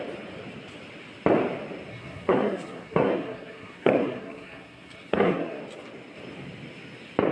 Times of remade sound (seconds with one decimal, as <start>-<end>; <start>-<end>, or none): 1.9-5.6